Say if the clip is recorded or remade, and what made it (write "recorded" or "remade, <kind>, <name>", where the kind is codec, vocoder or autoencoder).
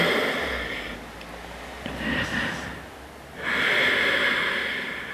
recorded